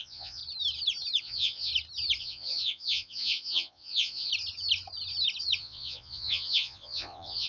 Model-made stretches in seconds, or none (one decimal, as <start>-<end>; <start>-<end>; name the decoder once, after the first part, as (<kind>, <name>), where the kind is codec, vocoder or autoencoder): 0.0-0.4 (vocoder, Vocos); 1.2-1.7; 2.2-4.3; 5.6-7.5